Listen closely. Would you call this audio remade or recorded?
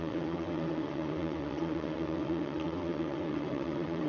remade